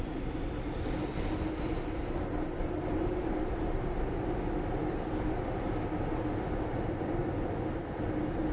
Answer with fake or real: real